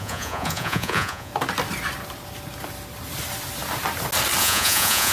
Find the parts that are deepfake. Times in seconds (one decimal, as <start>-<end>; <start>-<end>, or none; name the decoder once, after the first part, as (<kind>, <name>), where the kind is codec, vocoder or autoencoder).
0.0-1.3 (vocoder, Vocos); 4.4-5.1